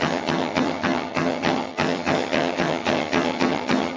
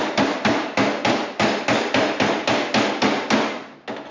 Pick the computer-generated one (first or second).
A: first